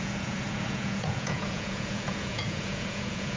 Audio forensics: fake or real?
fake